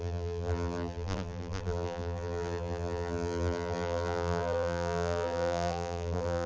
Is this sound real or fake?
fake